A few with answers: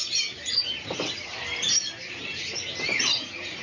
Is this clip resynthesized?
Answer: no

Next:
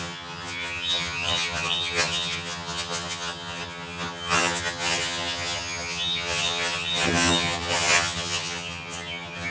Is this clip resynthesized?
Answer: yes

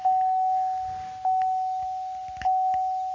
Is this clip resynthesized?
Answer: no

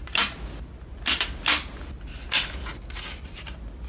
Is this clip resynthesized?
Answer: no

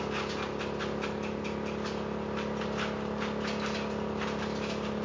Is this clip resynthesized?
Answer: no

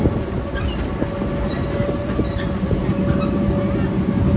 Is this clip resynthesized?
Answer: no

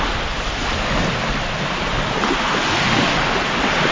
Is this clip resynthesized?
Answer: no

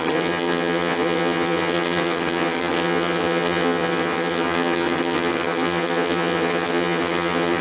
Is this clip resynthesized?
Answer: yes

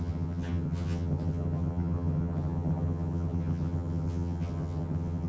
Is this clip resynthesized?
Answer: yes